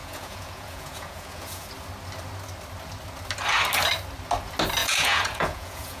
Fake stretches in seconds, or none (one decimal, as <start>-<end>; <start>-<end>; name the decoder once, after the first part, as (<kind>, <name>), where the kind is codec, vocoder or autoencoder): 0.0-1.7 (vocoder, Vocos); 4.8-6.0